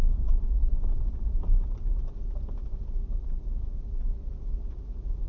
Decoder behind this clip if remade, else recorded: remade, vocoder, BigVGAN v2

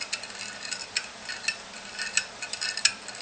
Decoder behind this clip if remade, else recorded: recorded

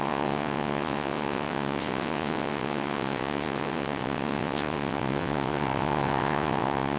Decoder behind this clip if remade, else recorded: remade, vocoder, WaveNeXt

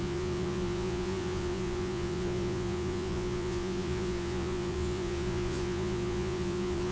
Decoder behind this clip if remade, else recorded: remade, vocoder, Vocos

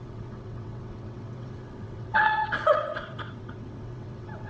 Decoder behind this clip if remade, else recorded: remade, vocoder, WaveNeXt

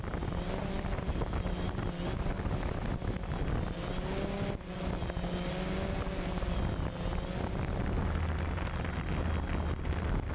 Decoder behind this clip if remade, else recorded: recorded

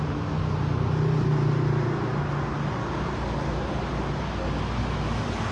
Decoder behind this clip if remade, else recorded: recorded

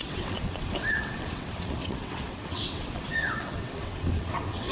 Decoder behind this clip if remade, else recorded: remade, vocoder, WaveNeXt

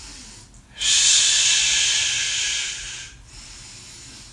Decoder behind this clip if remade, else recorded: recorded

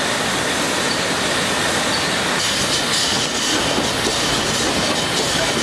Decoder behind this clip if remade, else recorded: recorded